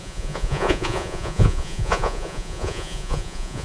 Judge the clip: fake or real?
fake